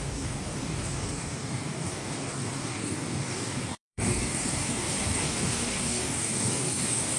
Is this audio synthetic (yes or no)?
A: yes